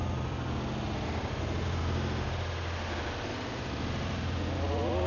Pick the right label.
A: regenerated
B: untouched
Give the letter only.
B